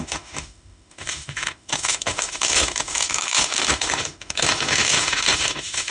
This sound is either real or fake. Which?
fake